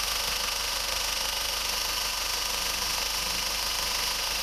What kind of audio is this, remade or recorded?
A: remade